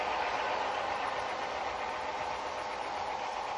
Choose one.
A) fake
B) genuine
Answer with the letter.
B